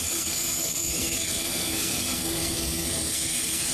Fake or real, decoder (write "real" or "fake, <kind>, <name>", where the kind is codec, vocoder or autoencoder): fake, codec, SNAC